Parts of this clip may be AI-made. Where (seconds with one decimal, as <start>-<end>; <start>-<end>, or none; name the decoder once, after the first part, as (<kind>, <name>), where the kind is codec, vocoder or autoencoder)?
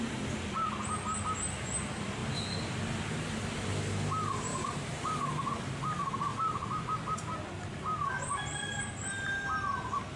4.5-5.3 (vocoder, BigVGAN v2)